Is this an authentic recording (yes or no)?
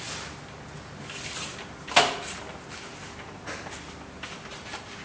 yes